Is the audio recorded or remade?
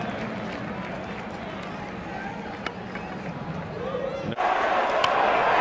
recorded